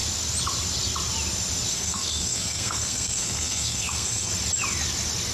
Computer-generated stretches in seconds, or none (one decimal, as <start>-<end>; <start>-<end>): 1.7-4.3